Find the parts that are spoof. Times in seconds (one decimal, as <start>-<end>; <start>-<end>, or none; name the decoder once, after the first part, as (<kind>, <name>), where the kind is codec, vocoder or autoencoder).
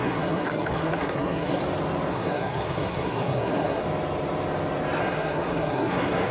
0.0-1.6 (codec, SNAC); 2.1-3.8; 5.0-6.3